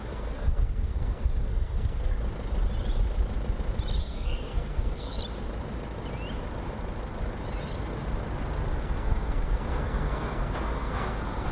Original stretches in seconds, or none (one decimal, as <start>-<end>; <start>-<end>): 2.1-4.0; 5.2-8.8